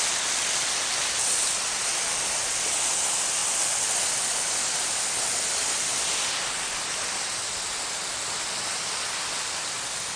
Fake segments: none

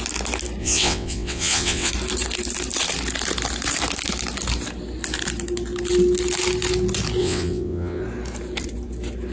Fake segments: 0.6-1.9; 7.2-8.0

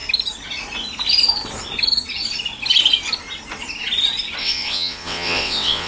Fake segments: 4.4-5.9

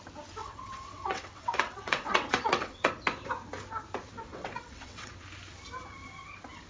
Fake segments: 0.4-2.9; 4.3-5.1